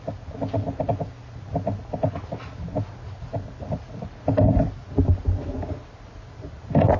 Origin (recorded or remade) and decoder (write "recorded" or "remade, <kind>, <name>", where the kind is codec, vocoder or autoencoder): recorded